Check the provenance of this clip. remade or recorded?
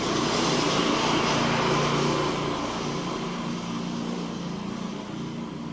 recorded